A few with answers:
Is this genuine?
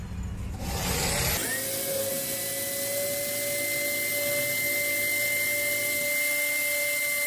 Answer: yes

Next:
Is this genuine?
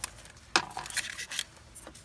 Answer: yes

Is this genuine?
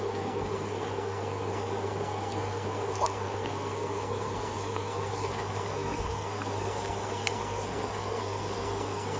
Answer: no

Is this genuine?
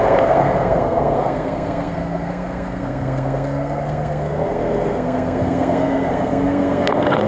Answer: no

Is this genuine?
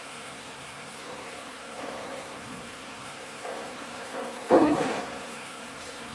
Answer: no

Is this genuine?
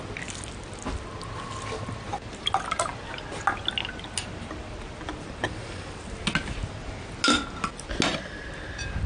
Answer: yes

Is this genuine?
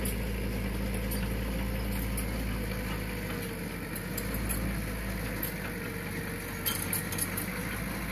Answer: yes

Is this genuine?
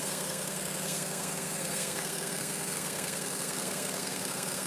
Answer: no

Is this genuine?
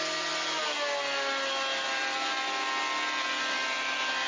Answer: yes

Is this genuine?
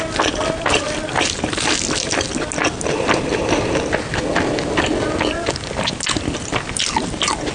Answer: yes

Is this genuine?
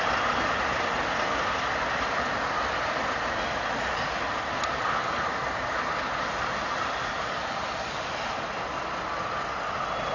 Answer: yes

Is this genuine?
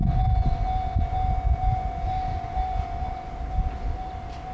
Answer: yes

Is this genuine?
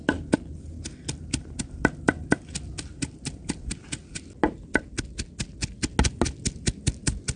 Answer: yes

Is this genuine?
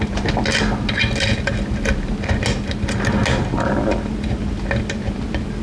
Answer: yes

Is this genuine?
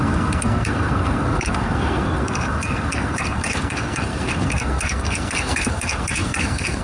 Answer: no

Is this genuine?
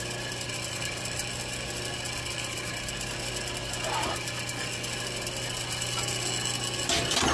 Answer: yes